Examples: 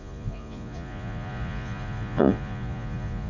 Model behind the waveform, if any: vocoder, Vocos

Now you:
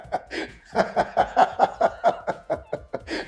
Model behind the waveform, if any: vocoder, Vocos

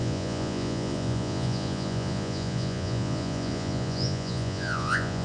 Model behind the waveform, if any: vocoder, Vocos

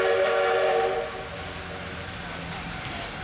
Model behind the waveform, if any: none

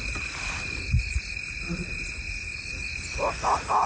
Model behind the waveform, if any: none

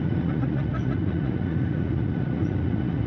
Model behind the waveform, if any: vocoder, Vocos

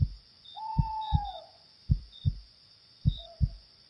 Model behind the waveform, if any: vocoder, Vocos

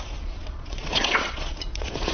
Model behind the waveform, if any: vocoder, Vocos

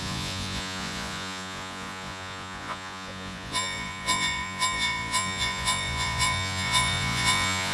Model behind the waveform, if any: vocoder, Vocos